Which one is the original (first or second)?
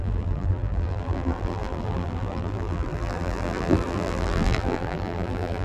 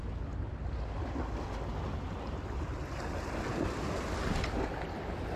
second